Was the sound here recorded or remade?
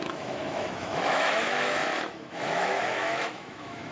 remade